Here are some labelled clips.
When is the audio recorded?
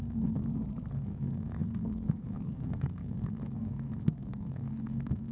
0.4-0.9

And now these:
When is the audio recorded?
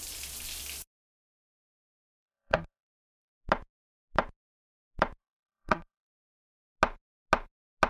0.0-1.9; 3.3-5.2; 6.2-7.9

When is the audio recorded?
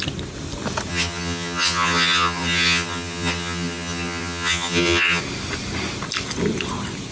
0.0-0.9; 5.2-7.1